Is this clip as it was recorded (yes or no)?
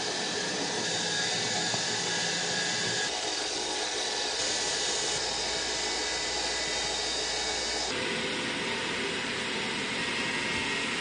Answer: yes